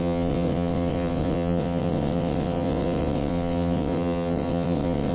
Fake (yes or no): yes